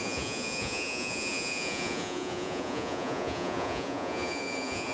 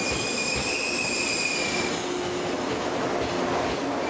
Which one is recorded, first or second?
second